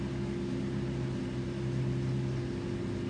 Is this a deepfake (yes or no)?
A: no